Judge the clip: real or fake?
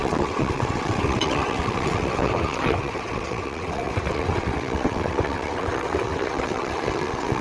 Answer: fake